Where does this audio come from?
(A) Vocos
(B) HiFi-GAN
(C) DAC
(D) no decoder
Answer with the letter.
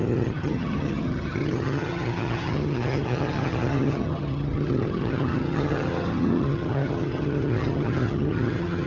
B